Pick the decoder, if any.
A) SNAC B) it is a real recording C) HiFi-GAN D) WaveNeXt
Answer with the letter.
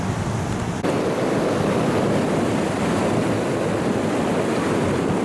B